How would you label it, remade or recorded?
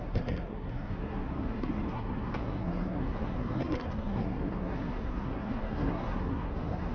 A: remade